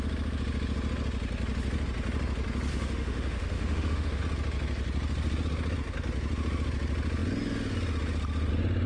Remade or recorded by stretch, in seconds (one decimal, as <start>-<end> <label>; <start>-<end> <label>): 0.0-2.7 recorded; 2.7-4.2 remade; 4.2-8.9 recorded